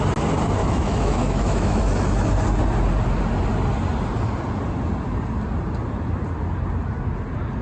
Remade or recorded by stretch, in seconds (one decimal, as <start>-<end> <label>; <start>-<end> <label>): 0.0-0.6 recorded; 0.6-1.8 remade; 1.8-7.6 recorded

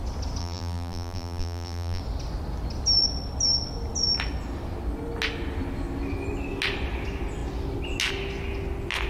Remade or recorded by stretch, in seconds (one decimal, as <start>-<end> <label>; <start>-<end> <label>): 0.0-0.4 recorded; 0.4-2.0 remade; 2.0-9.1 recorded

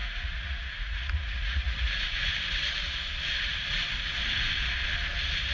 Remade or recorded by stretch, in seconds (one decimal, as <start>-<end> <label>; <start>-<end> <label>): 0.0-2.3 remade; 2.3-5.5 recorded